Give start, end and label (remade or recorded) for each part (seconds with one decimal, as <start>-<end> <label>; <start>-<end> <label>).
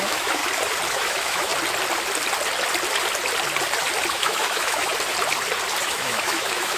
0.0-0.4 remade; 0.4-0.9 recorded; 0.9-1.5 remade; 1.5-4.1 recorded; 4.1-4.9 remade; 4.9-5.8 recorded; 5.8-6.8 remade